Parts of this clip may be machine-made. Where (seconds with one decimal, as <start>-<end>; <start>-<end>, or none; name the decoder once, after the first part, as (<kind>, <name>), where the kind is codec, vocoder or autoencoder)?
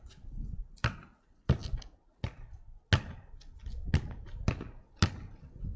none